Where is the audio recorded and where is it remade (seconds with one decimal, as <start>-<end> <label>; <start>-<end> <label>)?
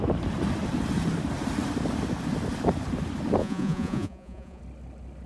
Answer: 0.0-3.4 recorded; 3.4-4.6 remade; 4.6-5.3 recorded